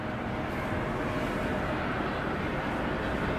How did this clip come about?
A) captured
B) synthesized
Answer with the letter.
A